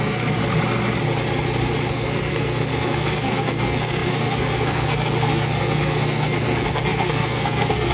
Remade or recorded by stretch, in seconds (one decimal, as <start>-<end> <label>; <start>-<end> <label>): 0.0-0.4 remade; 0.4-1.9 recorded; 1.9-7.9 remade